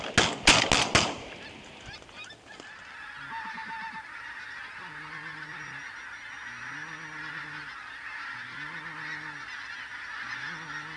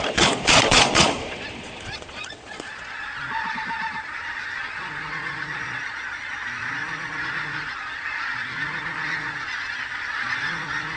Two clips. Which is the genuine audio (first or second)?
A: first